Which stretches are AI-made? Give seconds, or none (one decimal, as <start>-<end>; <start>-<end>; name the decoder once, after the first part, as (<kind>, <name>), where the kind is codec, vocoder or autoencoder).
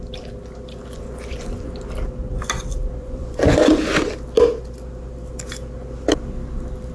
0.8-1.7 (vocoder, Vocos); 3.0-4.1